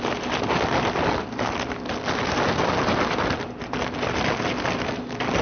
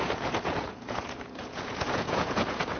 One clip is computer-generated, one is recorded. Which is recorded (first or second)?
first